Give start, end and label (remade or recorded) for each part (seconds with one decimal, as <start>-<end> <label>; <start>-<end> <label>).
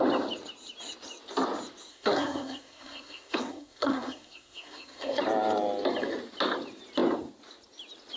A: 0.0-1.9 recorded; 1.9-5.2 remade; 5.2-8.2 recorded